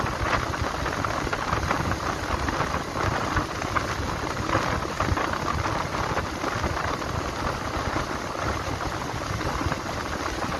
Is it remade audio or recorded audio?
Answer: recorded